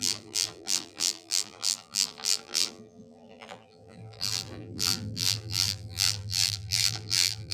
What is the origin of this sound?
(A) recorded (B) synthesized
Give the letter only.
B